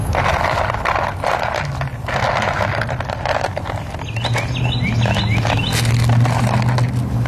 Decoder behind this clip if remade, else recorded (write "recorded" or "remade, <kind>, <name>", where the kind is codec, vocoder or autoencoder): recorded